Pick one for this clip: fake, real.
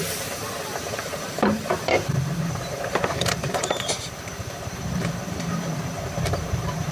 fake